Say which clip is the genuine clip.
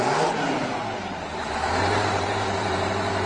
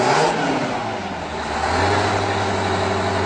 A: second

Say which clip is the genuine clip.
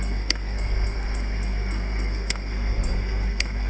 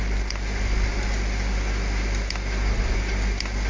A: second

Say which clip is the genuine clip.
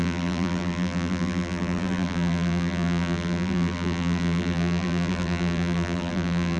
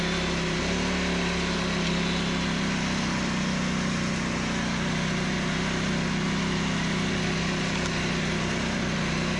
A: second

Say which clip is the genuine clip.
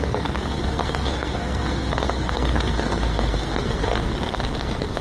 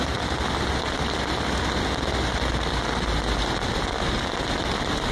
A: second